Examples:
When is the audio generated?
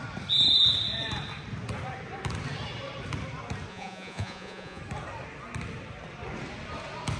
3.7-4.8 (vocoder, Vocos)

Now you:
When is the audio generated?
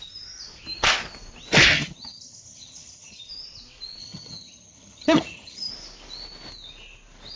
1.7-3.3 (vocoder, HiFi-GAN); 4.0-5.7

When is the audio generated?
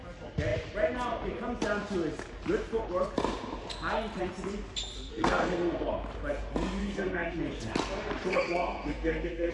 5.1-5.9 (codec, SNAC); 6.8-7.4; 8.3-9.5